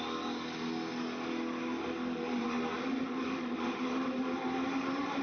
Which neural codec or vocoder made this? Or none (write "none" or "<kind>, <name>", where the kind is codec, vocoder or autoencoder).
none